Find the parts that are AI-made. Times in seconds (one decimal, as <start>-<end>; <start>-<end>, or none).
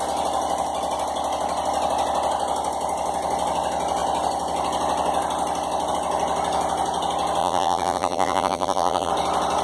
7.4-9.1